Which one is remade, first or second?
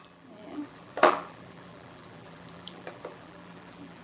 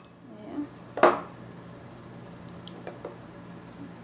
first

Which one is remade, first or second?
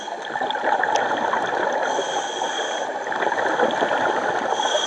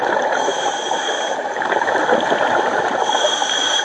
second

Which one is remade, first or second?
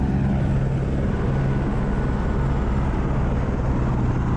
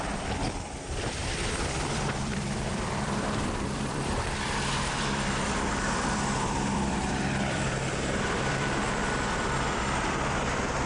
second